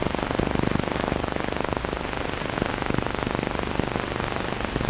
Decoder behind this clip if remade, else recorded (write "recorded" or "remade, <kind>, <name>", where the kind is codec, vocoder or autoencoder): recorded